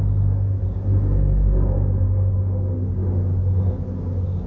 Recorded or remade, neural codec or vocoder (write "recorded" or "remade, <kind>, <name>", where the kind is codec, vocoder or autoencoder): recorded